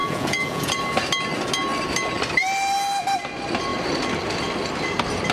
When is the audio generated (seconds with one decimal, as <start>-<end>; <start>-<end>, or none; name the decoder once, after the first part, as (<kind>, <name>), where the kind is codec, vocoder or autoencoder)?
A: 0.0-0.7 (vocoder, Vocos)